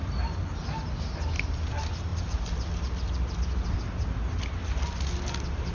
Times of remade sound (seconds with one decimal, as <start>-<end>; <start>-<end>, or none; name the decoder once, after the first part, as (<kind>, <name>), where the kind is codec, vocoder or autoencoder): none